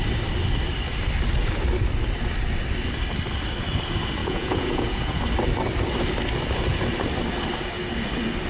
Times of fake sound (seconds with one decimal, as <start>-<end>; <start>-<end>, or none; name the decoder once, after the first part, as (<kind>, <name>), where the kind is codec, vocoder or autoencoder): 4.2-5.2 (vocoder, Vocos)

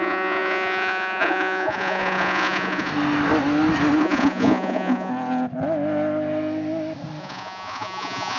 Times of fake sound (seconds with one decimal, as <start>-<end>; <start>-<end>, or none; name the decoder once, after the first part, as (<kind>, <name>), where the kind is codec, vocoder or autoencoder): 0.0-2.9 (vocoder, Vocos); 4.0-5.1; 7.2-8.4

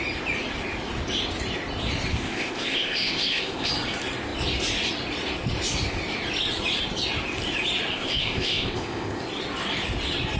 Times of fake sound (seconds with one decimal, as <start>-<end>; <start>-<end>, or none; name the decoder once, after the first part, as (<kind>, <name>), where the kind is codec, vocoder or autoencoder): 2.1-3.7 (codec, ZipCodec); 7.9-9.2

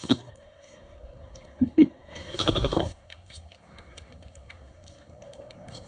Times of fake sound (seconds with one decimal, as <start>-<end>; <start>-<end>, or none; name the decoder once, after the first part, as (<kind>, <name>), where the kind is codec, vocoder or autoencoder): 0.0-5.9 (codec, SNAC)

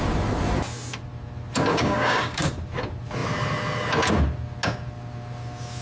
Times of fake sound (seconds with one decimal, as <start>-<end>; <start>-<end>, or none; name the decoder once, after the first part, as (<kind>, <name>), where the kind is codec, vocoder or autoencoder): 1.7-2.5 (codec, DAC)